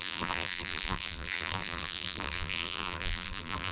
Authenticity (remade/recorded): remade